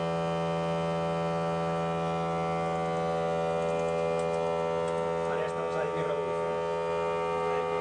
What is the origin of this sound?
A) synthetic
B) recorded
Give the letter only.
B